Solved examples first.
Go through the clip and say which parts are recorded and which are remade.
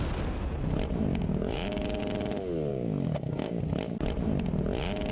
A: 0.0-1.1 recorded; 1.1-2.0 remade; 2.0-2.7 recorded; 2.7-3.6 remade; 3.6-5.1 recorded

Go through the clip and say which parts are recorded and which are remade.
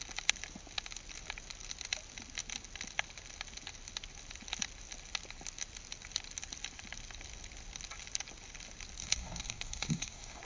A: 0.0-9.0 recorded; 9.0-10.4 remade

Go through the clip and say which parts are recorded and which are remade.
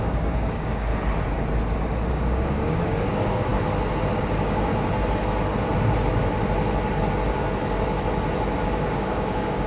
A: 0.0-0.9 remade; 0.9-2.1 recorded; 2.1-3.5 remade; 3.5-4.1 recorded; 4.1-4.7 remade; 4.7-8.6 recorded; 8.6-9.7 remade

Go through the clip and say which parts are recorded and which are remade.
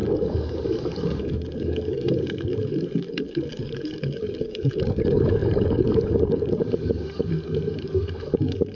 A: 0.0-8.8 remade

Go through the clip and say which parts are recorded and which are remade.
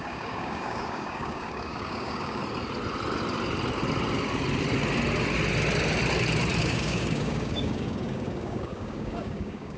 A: 0.0-2.4 remade; 2.4-6.6 recorded; 6.6-9.8 remade